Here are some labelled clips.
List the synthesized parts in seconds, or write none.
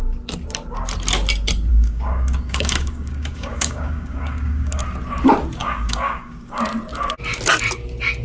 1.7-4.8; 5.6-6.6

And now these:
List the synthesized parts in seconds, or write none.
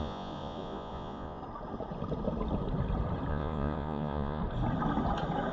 0.0-1.4; 3.3-4.4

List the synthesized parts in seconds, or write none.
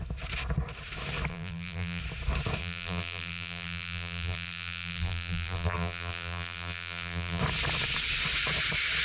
1.3-2.0; 2.6-7.4